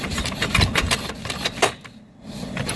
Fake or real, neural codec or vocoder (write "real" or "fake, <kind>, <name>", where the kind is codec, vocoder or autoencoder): real